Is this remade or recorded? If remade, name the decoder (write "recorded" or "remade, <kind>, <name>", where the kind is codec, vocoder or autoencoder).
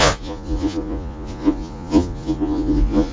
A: remade, vocoder, Vocos